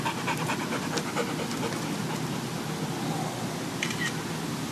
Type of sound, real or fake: real